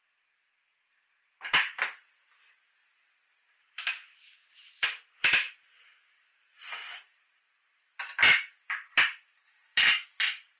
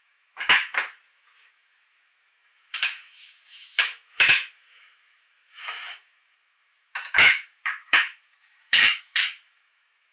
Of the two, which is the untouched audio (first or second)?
first